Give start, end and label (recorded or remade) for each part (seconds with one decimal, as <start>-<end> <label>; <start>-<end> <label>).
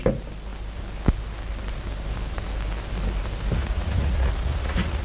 0.0-3.6 recorded; 3.6-5.0 remade